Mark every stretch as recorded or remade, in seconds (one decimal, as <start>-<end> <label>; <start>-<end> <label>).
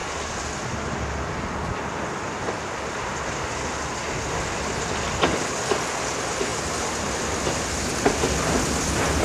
0.0-9.2 recorded